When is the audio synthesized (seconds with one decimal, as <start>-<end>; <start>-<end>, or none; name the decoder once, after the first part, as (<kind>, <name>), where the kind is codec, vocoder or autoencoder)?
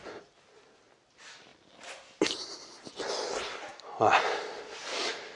3.7-4.8 (vocoder, BigVGAN v2)